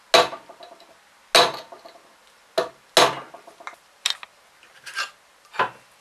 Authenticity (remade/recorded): recorded